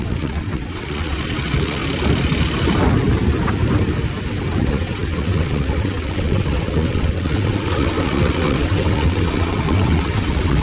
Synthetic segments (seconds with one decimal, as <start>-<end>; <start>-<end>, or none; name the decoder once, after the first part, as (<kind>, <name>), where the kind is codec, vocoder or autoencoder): 0.0-1.8 (vocoder, WaveNeXt); 4.5-10.6